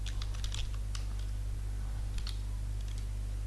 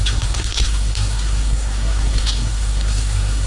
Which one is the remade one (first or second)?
second